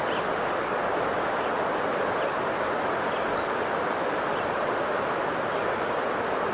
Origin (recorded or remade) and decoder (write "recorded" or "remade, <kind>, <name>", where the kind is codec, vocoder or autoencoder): recorded